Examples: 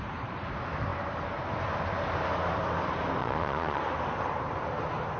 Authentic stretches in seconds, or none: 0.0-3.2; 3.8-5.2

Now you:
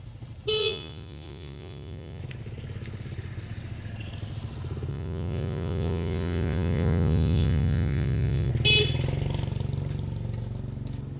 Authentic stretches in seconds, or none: 0.0-0.6; 2.2-4.9; 8.5-11.2